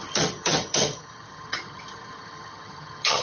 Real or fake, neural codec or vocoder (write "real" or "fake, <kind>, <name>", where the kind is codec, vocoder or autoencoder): fake, vocoder, HiFi-GAN